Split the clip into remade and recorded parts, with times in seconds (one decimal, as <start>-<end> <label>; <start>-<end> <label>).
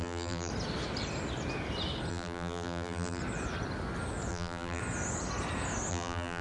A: 0.0-0.5 remade; 0.5-2.1 recorded; 2.1-3.2 remade; 3.2-4.3 recorded; 4.3-4.8 remade; 4.8-5.9 recorded; 5.9-6.4 remade